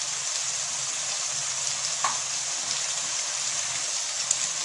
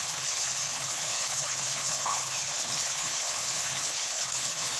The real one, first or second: first